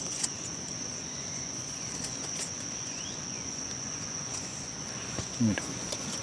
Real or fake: fake